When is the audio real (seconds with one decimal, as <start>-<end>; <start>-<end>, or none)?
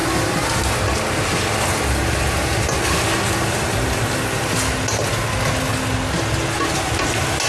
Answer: 0.0-7.5